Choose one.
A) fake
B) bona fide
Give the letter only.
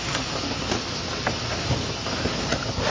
B